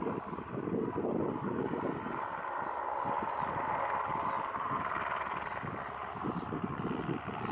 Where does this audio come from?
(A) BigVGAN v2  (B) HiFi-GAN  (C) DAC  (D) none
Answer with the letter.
D